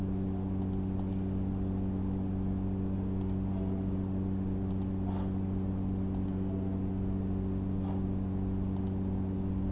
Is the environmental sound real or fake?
real